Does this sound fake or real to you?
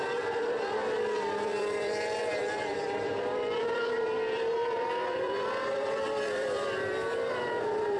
fake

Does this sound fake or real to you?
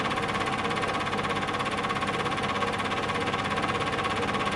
real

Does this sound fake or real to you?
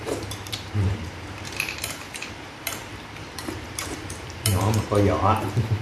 fake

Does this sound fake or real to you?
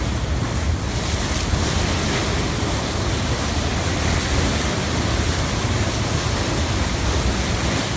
real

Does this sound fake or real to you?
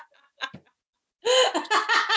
real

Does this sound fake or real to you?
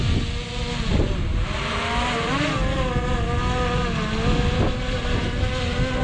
real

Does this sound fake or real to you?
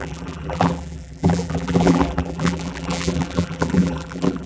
fake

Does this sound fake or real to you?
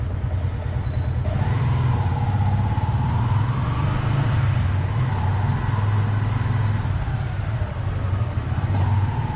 real